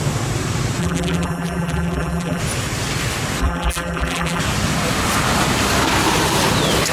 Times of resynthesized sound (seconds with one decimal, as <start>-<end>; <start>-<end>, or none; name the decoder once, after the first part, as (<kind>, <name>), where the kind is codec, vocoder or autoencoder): 0.8-2.4 (vocoder, BigVGAN v2); 3.4-4.4